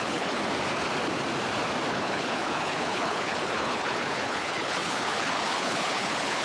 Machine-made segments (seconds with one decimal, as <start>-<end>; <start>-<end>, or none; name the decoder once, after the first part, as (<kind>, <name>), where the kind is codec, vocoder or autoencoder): 0.0-0.4 (codec, HILCodec); 1.9-6.4